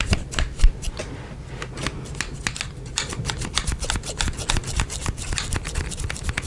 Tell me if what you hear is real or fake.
real